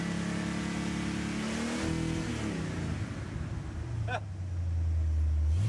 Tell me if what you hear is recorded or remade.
recorded